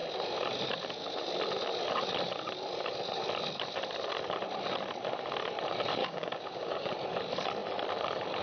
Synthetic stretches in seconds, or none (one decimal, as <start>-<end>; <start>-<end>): 6.0-6.9